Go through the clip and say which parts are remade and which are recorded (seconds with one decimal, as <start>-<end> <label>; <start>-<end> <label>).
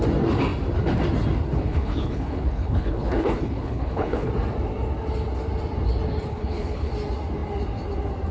0.0-1.6 recorded; 1.6-4.3 remade; 4.3-6.3 recorded; 6.3-6.9 remade; 6.9-8.3 recorded